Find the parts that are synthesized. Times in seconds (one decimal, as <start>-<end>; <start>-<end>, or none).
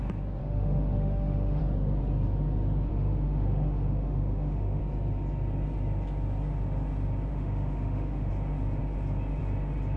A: 0.4-1.6; 2.9-4.8; 7.3-8.3